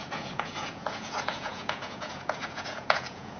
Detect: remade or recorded remade